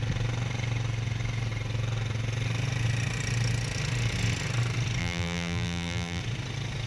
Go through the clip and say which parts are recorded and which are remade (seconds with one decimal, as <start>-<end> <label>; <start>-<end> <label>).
0.0-5.0 recorded; 5.0-6.2 remade; 6.2-6.9 recorded